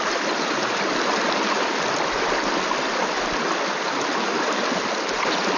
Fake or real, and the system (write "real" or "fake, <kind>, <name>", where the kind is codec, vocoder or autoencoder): real